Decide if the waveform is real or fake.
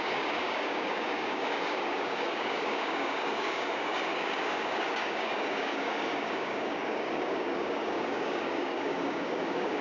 fake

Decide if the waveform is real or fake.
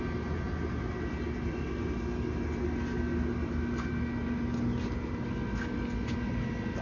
real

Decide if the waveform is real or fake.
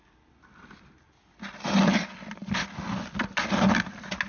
real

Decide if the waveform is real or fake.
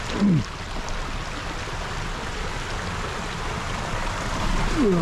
real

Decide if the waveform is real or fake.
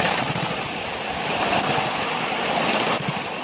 real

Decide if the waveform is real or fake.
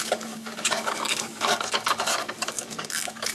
fake